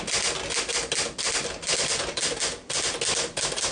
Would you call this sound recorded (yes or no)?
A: yes